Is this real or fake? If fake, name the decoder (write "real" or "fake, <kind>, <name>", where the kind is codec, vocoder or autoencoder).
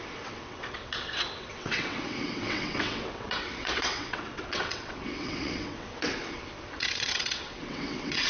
fake, vocoder, WaveNeXt